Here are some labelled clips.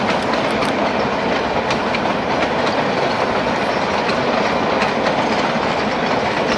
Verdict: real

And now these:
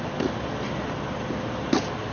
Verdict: real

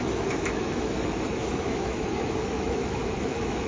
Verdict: fake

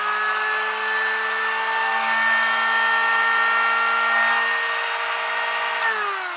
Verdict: real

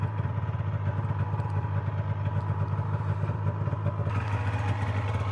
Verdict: real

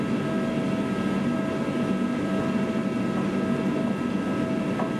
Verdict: real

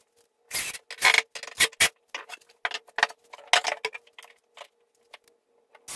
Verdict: real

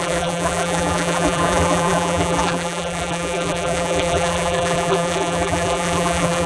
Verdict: fake